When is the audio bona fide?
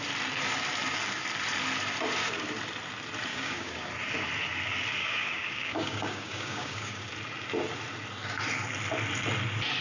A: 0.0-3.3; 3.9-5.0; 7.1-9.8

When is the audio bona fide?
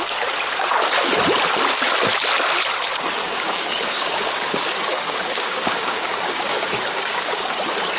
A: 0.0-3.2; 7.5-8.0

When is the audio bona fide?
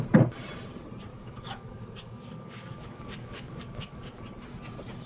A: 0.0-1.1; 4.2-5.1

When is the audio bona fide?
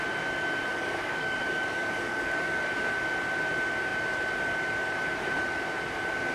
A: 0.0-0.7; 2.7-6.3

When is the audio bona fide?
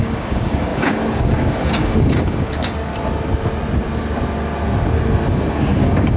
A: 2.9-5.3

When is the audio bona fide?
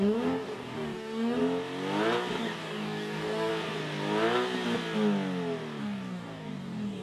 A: 1.4-2.4; 3.5-5.8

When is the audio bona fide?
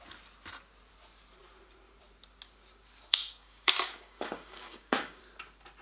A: 0.0-3.1; 5.2-5.8